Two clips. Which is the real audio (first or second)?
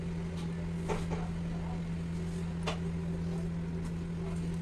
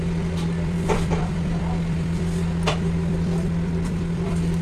first